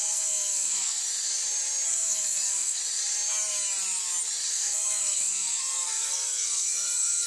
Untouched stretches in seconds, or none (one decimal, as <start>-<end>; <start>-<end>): 1.0-1.9; 2.8-4.5